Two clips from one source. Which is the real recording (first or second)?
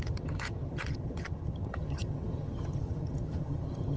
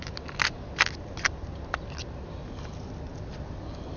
second